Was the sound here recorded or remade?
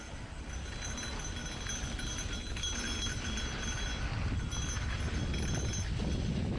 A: recorded